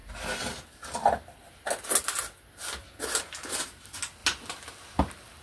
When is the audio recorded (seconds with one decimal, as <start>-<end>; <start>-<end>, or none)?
0.0-5.4